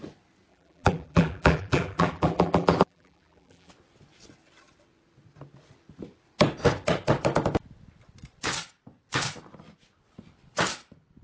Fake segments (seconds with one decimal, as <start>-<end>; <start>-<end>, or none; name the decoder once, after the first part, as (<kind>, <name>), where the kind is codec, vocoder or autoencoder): 0.5-3.7 (vocoder, BigVGAN v2)